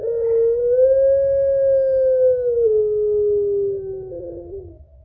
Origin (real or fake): real